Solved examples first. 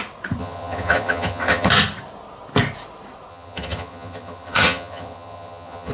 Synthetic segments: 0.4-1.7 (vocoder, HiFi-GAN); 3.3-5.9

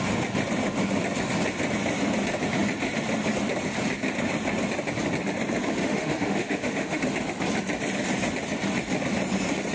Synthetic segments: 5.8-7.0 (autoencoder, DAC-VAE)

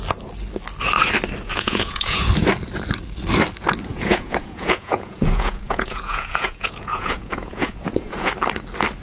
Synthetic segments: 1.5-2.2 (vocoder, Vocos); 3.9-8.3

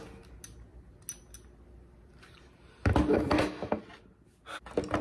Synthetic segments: 3.1-3.8 (autoencoder, DAC-VAE)